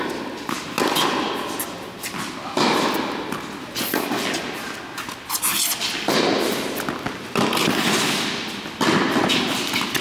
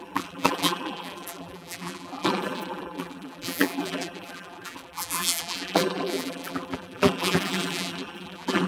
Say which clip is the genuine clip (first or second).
first